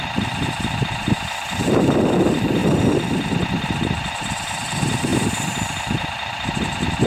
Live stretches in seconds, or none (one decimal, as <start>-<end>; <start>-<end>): 2.6-3.6